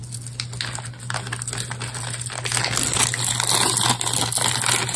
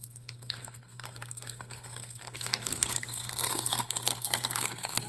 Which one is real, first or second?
first